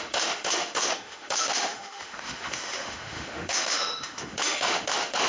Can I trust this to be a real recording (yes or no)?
no